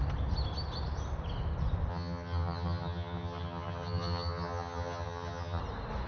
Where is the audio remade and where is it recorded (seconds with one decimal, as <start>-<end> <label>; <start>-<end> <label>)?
0.0-1.9 recorded; 1.9-5.6 remade; 5.6-6.1 recorded